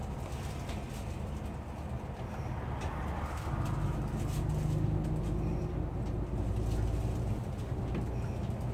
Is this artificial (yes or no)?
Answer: no